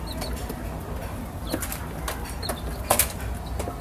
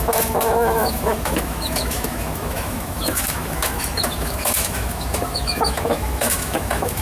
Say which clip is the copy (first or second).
second